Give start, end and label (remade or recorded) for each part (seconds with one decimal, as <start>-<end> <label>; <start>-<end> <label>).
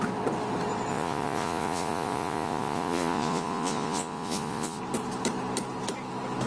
0.0-0.9 recorded; 0.9-4.8 remade; 4.8-6.5 recorded